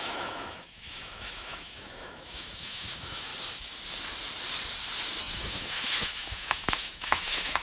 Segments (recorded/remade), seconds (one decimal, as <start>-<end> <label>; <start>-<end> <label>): 0.0-3.3 remade; 3.3-5.2 recorded; 5.2-7.6 remade

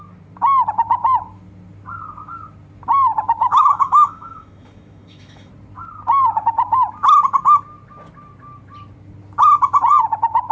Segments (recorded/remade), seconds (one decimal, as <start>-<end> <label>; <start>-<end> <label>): 0.0-3.4 recorded; 3.4-5.5 remade; 5.5-10.5 recorded

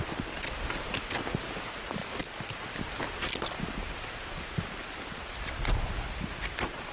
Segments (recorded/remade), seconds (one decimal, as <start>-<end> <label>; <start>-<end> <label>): 0.0-6.9 recorded

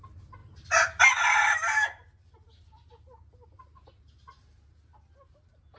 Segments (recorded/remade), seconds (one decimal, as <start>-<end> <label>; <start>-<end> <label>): 0.0-5.8 recorded

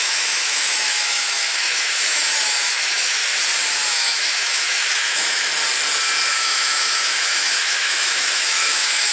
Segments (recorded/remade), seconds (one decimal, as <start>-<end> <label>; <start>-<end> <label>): 0.0-3.2 remade; 3.2-3.9 recorded; 3.9-5.5 remade; 5.5-6.3 recorded; 6.3-9.1 remade